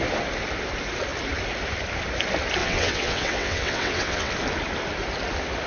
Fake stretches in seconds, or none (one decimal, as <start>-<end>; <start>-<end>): 2.6-4.3